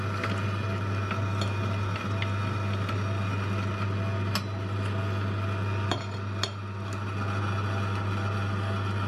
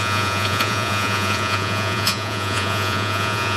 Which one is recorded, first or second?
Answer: first